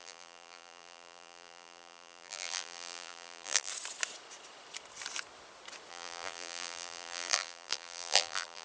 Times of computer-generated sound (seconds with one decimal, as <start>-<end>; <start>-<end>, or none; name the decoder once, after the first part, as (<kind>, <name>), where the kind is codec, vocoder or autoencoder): 0.0-3.7 (vocoder, BigVGAN v2); 5.9-8.6